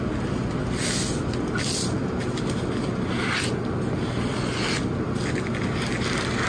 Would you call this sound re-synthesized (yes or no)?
no